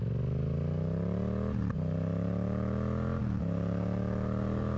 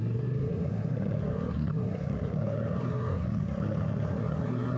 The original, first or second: first